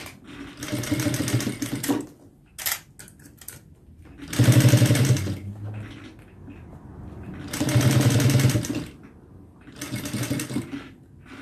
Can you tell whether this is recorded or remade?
recorded